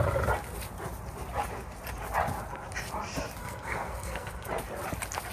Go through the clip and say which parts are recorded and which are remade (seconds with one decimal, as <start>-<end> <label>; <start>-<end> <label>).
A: 0.0-3.4 recorded; 3.4-4.5 remade; 4.5-5.3 recorded